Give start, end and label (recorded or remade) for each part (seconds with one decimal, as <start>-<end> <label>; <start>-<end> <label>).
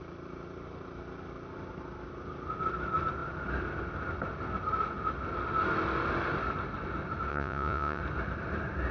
0.0-7.3 recorded; 7.3-8.0 remade; 8.0-8.9 recorded